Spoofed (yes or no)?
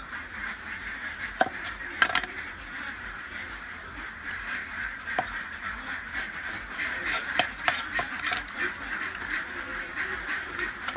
yes